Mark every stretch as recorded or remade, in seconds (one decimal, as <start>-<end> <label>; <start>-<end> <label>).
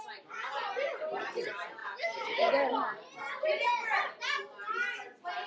0.0-1.8 recorded; 1.8-2.5 remade; 2.5-5.5 recorded